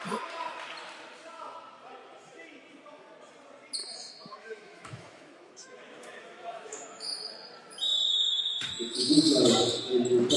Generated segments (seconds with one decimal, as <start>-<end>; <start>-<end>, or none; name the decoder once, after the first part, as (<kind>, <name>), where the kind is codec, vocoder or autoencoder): 3.8-7.3 (autoencoder, DAC-VAE); 8.1-9.5